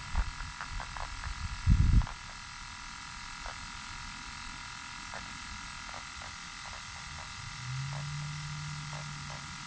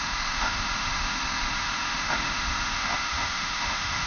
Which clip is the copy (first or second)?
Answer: second